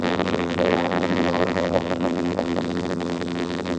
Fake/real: fake